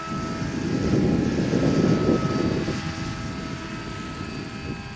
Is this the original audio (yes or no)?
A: yes